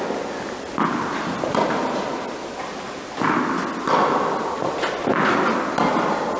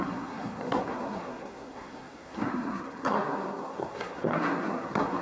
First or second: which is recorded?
first